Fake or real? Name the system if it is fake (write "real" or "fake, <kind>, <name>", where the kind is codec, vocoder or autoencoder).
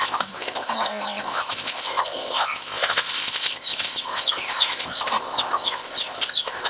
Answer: fake, codec, ZipCodec